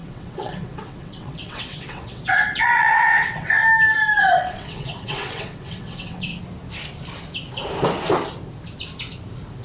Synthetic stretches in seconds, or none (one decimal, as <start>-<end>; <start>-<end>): 0.0-3.6; 4.2-6.3